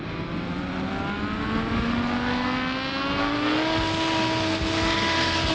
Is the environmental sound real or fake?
real